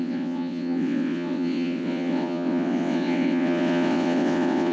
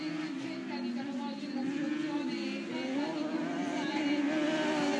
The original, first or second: second